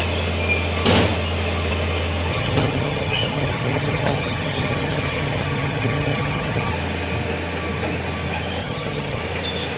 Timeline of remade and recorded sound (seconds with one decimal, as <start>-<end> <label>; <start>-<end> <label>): 0.0-2.3 recorded; 2.3-6.7 remade; 6.7-8.6 recorded; 8.6-9.2 remade; 9.2-9.8 recorded